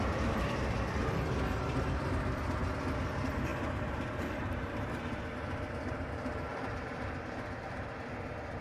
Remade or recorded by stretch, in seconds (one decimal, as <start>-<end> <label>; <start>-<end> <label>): 0.0-3.5 recorded; 3.5-4.9 remade; 4.9-6.5 recorded; 6.5-7.9 remade; 7.9-8.6 recorded